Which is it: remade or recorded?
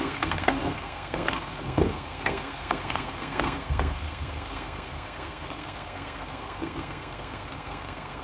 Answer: remade